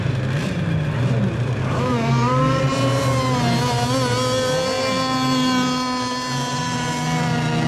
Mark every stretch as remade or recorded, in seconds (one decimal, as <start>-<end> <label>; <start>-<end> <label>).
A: 0.0-1.6 recorded; 1.6-2.6 remade; 2.6-7.7 recorded